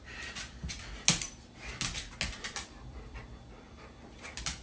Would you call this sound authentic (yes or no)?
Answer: yes